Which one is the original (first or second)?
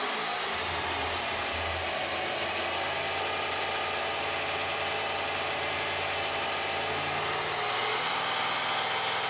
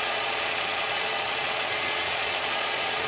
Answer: first